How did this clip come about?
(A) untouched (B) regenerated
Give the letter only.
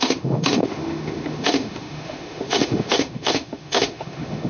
B